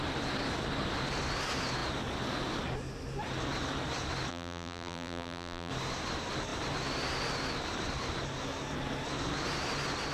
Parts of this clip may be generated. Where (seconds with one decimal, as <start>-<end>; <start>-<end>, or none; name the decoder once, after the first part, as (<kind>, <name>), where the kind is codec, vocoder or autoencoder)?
4.3-5.7 (vocoder, BigVGAN v2)